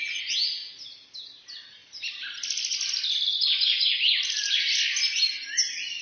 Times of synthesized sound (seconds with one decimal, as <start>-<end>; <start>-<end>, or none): 1.8-4.1